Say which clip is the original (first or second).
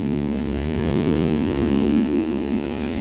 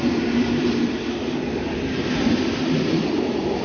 second